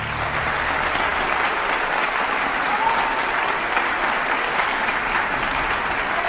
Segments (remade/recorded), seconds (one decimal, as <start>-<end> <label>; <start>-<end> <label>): 0.0-6.3 recorded

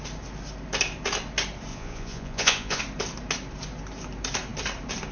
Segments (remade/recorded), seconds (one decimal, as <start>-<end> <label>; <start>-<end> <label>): 0.0-1.7 recorded; 1.7-2.8 remade; 2.8-5.1 recorded

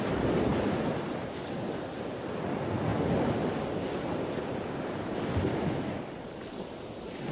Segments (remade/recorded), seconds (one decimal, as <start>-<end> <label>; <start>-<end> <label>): 0.0-5.5 recorded; 5.5-6.0 remade; 6.0-7.3 recorded